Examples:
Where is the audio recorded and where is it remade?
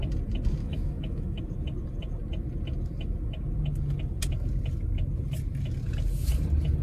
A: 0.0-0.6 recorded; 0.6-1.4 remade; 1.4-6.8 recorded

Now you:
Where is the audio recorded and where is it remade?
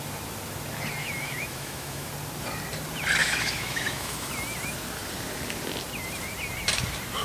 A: 0.0-1.0 recorded; 1.0-2.1 remade; 2.1-3.2 recorded; 3.2-4.3 remade; 4.3-7.2 recorded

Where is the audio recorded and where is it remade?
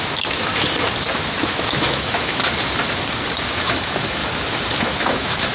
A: 0.0-0.5 remade; 0.5-1.4 recorded; 1.4-2.4 remade; 2.4-3.5 recorded; 3.5-4.2 remade; 4.2-4.8 recorded; 4.8-5.5 remade